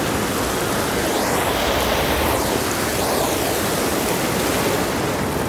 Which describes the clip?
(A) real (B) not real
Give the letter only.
A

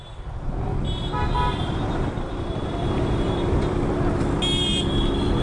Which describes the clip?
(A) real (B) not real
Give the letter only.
A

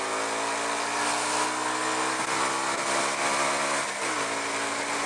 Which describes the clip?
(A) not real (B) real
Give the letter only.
B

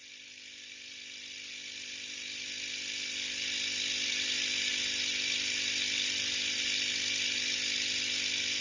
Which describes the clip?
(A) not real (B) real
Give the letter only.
B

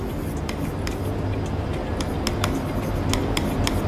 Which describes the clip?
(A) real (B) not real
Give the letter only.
A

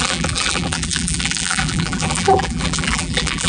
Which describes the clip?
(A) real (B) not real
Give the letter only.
B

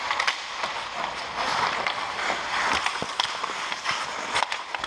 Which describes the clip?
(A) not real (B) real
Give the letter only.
B